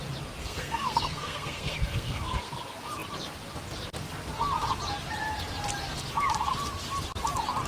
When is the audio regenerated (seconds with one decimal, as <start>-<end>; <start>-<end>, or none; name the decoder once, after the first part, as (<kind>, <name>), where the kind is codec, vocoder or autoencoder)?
0.4-2.5 (codec, SNAC)